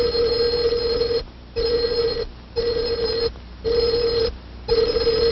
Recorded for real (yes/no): yes